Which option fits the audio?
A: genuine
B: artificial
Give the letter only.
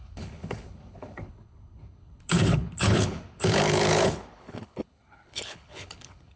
B